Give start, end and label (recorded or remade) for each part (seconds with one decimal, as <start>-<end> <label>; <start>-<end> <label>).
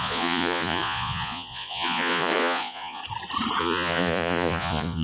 0.0-3.0 remade; 3.0-3.6 recorded; 3.6-5.0 remade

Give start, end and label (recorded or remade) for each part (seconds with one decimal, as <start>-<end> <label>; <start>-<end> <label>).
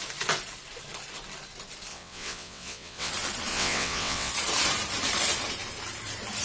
0.0-1.9 recorded; 1.9-3.1 remade; 3.1-3.5 recorded; 3.5-4.3 remade; 4.3-6.4 recorded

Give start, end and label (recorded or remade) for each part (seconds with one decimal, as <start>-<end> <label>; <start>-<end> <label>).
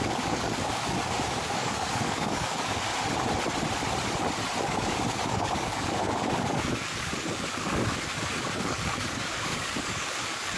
0.0-2.9 remade; 2.9-4.6 recorded; 4.6-10.6 remade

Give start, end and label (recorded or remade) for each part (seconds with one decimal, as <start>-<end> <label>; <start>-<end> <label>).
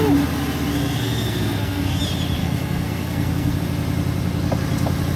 0.0-0.7 recorded; 0.7-2.0 remade; 2.0-2.4 recorded; 2.4-3.6 remade; 3.6-5.2 recorded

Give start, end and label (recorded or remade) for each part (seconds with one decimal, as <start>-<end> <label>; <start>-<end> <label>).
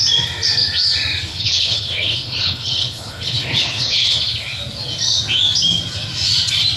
0.0-1.3 recorded; 1.3-4.2 remade; 4.2-6.8 recorded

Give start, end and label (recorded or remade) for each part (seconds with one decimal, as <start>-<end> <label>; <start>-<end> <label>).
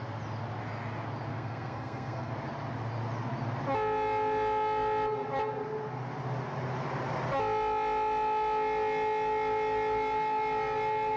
0.0-1.3 recorded; 1.3-2.3 remade; 2.3-11.2 recorded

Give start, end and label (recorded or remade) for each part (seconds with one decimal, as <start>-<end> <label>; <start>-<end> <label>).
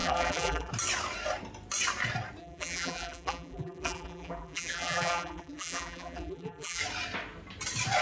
0.0-0.7 remade; 0.7-2.4 recorded; 2.4-6.8 remade; 6.8-8.0 recorded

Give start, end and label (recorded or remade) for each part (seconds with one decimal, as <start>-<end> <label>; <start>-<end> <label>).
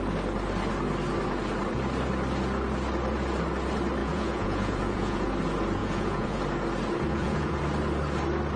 0.0-4.0 recorded; 4.0-5.3 remade; 5.3-5.8 recorded; 5.8-6.4 remade; 6.4-7.1 recorded; 7.1-7.6 remade; 7.6-8.6 recorded